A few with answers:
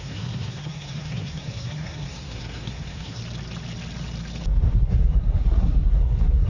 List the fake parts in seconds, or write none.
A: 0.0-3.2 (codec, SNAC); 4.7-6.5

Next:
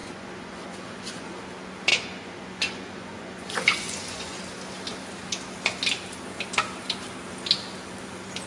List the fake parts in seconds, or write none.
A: 0.0-1.4 (vocoder, Vocos); 1.9-4.4

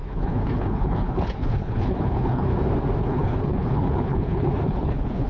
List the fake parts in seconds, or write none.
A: 0.0-2.5 (codec, HILCodec); 3.0-5.3

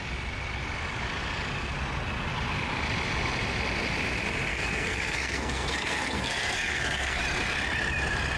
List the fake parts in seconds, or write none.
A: 4.5-7.2 (codec, SNAC)

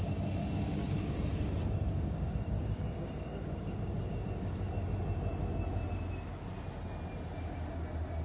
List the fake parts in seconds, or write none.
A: 0.8-4.7 (codec, DAC)

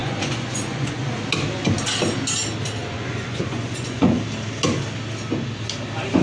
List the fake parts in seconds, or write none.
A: 0.0-1.2 (vocoder, Vocos); 2.8-4.2